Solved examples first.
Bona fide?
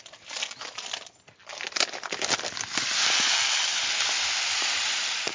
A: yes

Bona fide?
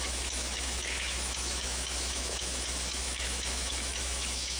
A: no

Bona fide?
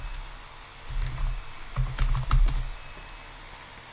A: yes